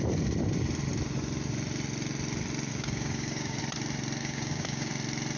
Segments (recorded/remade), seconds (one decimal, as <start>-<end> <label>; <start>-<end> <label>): 0.0-2.7 recorded; 2.7-3.6 remade; 3.6-4.2 recorded; 4.2-4.9 remade; 4.9-5.4 recorded